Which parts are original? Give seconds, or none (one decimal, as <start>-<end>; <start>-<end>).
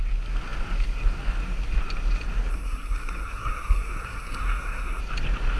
0.0-2.5; 5.0-5.6